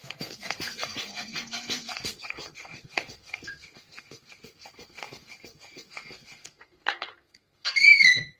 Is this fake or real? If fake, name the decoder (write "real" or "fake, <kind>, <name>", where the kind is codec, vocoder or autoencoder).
fake, codec, SNAC